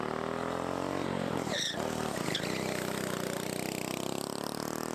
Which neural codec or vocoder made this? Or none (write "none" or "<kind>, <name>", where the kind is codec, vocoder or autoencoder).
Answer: none